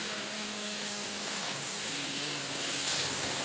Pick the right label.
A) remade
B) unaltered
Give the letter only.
A